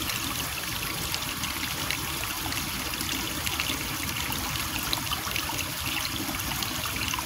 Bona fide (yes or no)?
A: yes